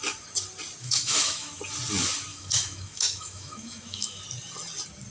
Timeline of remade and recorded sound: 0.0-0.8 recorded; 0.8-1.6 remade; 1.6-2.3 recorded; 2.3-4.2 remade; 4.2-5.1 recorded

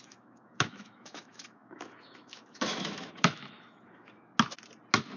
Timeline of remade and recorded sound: 0.0-4.3 remade; 4.3-5.2 recorded

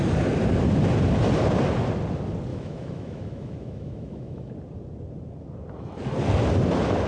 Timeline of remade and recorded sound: 0.0-2.5 recorded; 2.5-4.5 remade; 4.5-7.1 recorded

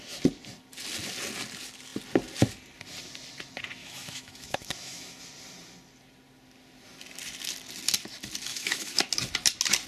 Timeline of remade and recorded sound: 0.0-3.8 recorded; 3.8-5.2 remade; 5.2-8.5 recorded; 8.5-9.0 remade; 9.0-9.9 recorded

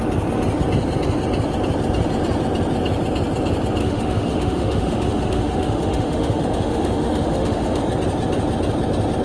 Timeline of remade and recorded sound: 0.0-3.8 recorded; 3.8-7.8 remade; 7.8-9.2 recorded

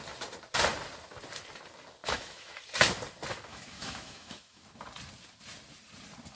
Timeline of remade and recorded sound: 0.0-2.0 recorded; 2.0-2.6 remade; 2.6-3.5 recorded; 3.5-4.6 remade; 4.6-6.4 recorded

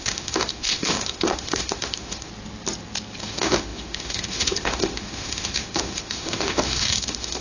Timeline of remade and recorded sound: 0.0-2.3 remade; 2.3-3.2 recorded; 3.2-7.4 remade

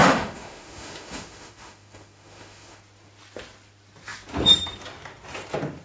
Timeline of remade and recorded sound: 0.0-2.8 remade; 2.8-5.8 recorded